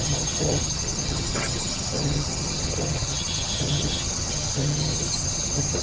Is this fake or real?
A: fake